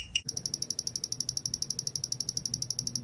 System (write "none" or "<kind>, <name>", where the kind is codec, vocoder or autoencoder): none